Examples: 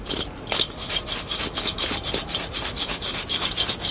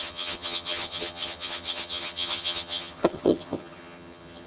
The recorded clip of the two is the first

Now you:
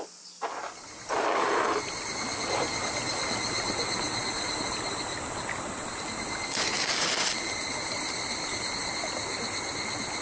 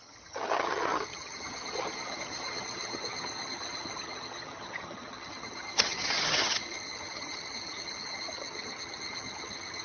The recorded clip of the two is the first